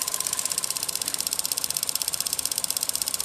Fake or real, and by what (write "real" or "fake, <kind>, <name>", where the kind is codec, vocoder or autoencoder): fake, vocoder, BigVGAN v2